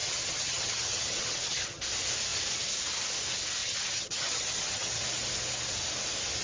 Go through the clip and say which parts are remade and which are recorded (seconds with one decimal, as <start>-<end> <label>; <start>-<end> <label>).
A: 0.0-1.8 remade; 1.8-3.6 recorded; 3.6-5.0 remade; 5.0-6.4 recorded